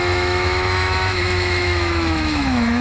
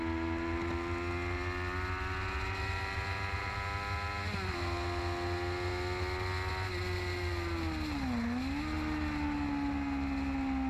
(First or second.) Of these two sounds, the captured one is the second